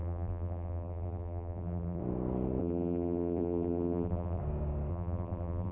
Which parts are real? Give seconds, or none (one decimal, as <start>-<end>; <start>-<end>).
2.0-2.6; 4.4-4.9